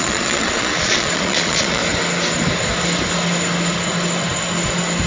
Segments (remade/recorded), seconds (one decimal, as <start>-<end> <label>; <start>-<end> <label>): 0.0-1.8 remade; 1.8-5.1 recorded